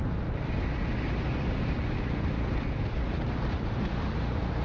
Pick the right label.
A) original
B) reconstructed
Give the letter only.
A